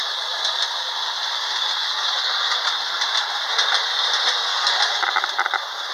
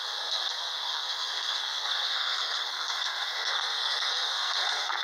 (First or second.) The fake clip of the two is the second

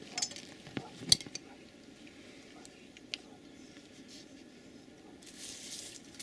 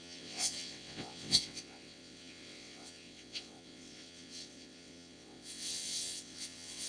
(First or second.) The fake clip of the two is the second